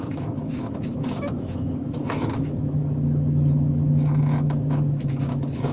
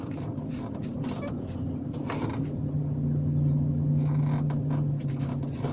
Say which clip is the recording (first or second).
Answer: second